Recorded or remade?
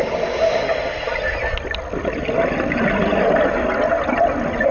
recorded